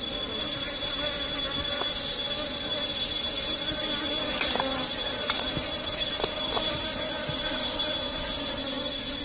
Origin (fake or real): real